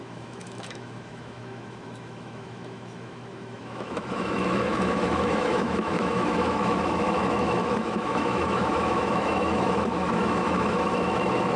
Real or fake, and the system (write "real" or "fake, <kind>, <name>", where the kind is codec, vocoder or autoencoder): fake, autoencoder, DAC-VAE